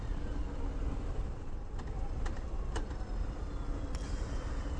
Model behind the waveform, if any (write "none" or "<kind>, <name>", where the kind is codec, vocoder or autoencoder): none